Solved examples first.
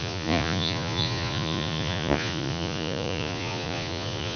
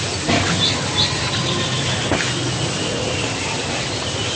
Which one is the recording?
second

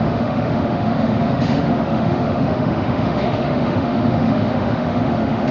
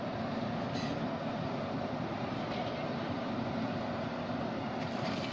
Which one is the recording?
second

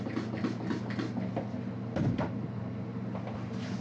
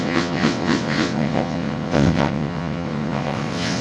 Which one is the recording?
first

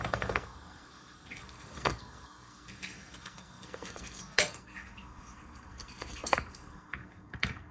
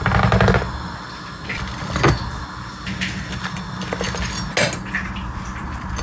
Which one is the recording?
second